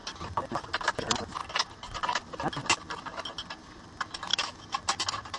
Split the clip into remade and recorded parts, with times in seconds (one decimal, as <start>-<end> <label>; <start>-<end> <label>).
0.0-4.3 recorded; 4.3-4.8 remade; 4.8-5.4 recorded